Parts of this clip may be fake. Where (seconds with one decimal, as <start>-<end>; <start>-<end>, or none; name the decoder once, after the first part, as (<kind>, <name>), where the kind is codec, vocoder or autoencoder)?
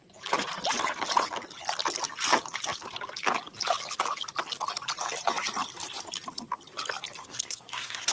7.2-8.1 (codec, SNAC)